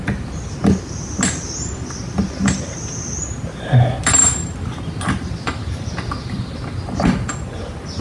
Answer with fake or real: real